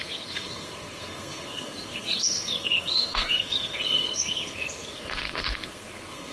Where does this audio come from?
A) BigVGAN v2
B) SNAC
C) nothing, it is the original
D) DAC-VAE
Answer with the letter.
B